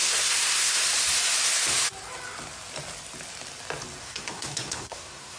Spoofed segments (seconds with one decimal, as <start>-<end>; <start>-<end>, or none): 0.0-0.8; 4.0-5.4